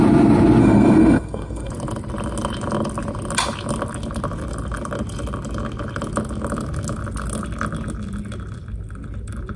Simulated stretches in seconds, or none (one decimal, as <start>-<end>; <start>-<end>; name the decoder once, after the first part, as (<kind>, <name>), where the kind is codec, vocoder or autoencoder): 0.6-1.7 (codec, SNAC)